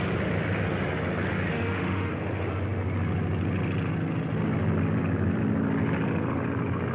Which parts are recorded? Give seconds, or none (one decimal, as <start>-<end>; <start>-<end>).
0.0-1.5; 2.1-6.9